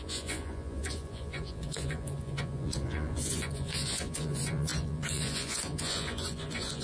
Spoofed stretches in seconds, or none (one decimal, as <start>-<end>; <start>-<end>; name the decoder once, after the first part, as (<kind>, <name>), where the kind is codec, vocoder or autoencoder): 0.0-6.8 (vocoder, Vocos)